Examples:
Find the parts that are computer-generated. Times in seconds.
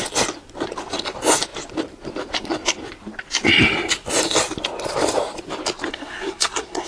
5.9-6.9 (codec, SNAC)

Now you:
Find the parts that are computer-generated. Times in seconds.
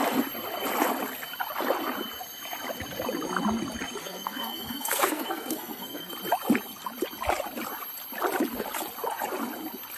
4.0-6.1 (codec, SNAC)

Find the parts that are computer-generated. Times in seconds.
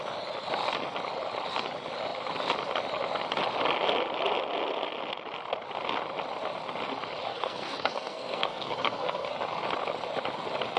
7.3-9.3 (codec, SNAC)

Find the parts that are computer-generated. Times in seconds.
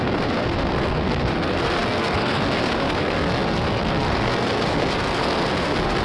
0.0-6.0 (codec, SNAC)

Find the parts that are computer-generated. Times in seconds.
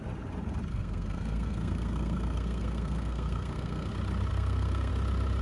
0.7-3.9 (codec, SNAC); 4.3-4.9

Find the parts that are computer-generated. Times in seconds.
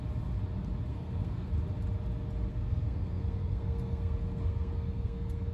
0.9-1.5 (codec, SNAC); 2.5-5.5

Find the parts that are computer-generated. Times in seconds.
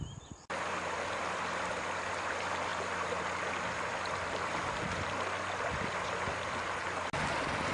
none